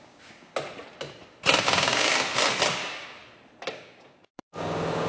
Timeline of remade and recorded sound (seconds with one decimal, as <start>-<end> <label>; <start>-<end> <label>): 0.0-0.5 remade; 0.5-1.6 recorded; 1.6-2.1 remade; 2.1-2.7 recorded; 2.7-3.2 remade; 3.2-3.7 recorded; 3.7-5.1 remade

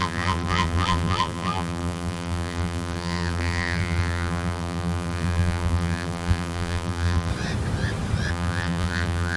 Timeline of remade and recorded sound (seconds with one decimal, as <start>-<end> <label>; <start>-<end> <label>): 0.0-7.3 remade; 7.3-8.3 recorded; 8.3-9.4 remade

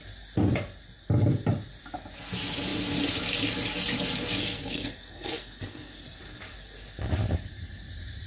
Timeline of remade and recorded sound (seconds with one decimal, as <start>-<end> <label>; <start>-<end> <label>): 0.0-4.4 recorded; 4.4-6.2 remade; 6.2-8.3 recorded